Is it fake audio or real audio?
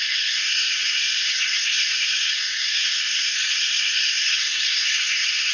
fake